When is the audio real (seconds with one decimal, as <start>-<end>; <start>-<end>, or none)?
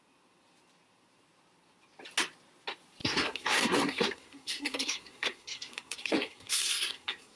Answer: 0.0-3.0